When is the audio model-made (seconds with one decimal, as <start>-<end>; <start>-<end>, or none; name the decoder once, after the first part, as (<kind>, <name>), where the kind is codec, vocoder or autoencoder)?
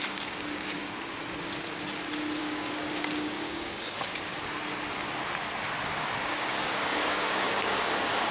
0.0-0.8 (codec, DAC); 2.4-4.1; 6.3-8.3